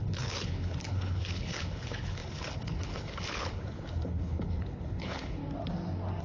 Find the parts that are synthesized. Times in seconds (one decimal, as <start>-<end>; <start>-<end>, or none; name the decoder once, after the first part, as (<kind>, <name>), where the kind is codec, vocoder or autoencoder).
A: 0.0-5.4 (codec, HILCodec)